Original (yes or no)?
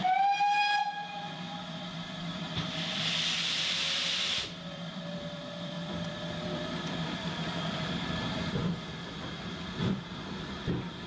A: no